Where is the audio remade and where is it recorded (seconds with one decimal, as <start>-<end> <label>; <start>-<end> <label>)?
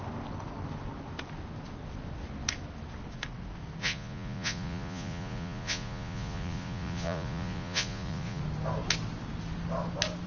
0.0-3.8 recorded; 3.8-8.4 remade; 8.4-10.3 recorded